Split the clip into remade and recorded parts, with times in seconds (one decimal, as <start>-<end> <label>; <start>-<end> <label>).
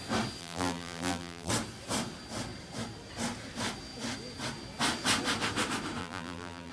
0.0-0.4 recorded; 0.4-1.5 remade; 1.5-6.0 recorded; 6.0-6.7 remade